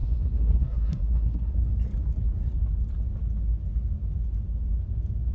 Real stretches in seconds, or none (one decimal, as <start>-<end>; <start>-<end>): 1.5-5.3